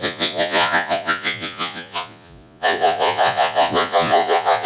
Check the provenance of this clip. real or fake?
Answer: fake